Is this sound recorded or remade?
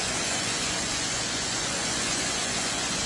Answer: remade